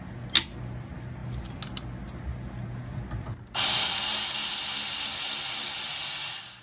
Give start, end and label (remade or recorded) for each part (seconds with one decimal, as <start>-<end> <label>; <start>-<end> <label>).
0.0-6.6 recorded